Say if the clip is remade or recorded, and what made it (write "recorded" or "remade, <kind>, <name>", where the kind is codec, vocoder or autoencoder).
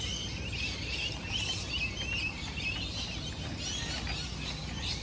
recorded